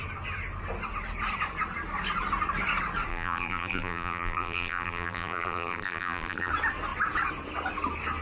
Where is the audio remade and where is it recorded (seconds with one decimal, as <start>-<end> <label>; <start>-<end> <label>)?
0.0-3.1 recorded; 3.1-6.5 remade; 6.5-8.2 recorded